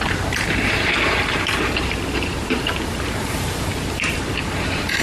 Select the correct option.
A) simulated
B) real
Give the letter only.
A